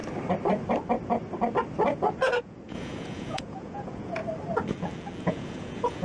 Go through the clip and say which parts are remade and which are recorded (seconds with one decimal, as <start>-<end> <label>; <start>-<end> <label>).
0.0-2.4 recorded; 2.4-4.2 remade; 4.2-5.2 recorded; 5.2-6.0 remade